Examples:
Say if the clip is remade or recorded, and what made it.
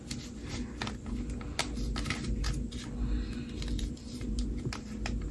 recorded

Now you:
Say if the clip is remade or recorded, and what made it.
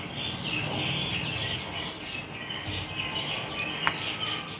recorded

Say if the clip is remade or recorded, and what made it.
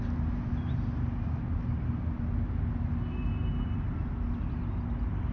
recorded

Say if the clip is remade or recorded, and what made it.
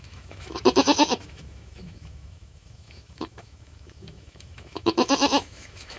remade, autoencoder, DAC-VAE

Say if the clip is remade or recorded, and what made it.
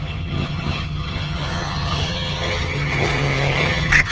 remade, vocoder, HiFi-GAN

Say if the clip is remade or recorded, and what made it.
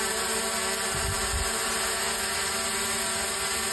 remade, vocoder, BigVGAN v2